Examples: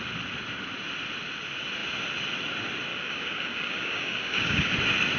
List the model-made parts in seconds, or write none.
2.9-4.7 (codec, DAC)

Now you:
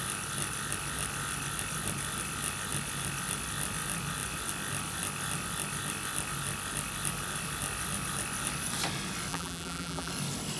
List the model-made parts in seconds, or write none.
9.3-10.1 (vocoder, BigVGAN v2)

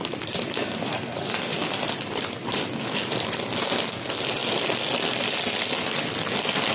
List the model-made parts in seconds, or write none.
none

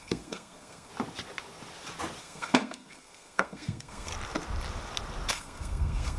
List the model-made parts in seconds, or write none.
0.0-0.9 (codec, SNAC); 2.2-4.1; 5.3-6.2

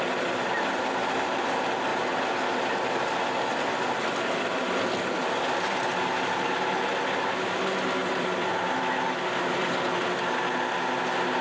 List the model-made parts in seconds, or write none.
8.0-9.7 (vocoder, BigVGAN v2)

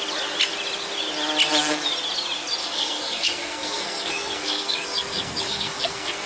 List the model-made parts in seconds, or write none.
2.6-6.3 (codec, SNAC)